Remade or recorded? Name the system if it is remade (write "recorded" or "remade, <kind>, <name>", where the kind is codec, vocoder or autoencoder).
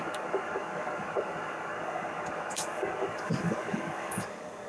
remade, codec, DAC